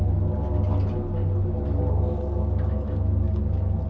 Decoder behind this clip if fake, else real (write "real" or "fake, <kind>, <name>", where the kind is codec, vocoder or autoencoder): real